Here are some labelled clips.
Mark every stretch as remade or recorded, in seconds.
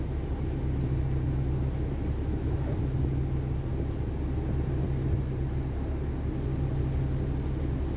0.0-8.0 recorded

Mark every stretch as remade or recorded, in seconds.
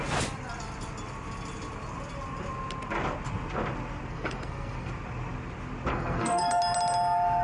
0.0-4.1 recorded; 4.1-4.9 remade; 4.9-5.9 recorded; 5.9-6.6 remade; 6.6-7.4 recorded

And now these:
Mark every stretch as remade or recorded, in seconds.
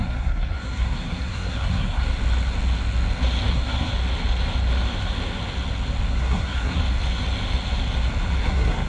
0.0-2.1 remade; 2.1-3.5 recorded; 3.5-3.9 remade; 3.9-6.1 recorded; 6.1-6.8 remade; 6.8-8.4 recorded; 8.4-8.9 remade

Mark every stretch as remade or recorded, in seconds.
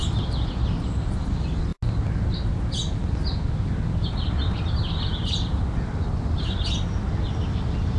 0.0-8.0 recorded